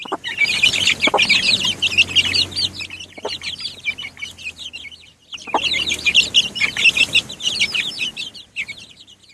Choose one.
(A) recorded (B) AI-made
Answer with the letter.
A